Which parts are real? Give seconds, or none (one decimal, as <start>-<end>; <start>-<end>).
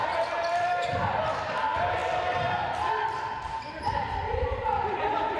2.0-3.5